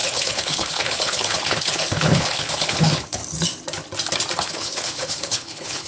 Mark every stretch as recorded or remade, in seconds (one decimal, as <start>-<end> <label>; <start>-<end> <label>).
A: 0.0-3.2 remade; 3.2-4.4 recorded; 4.4-5.9 remade